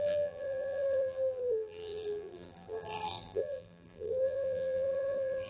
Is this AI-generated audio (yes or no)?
yes